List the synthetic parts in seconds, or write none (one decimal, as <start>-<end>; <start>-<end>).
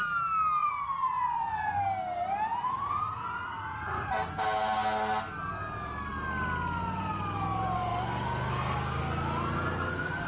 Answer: 0.6-1.8; 2.5-4.1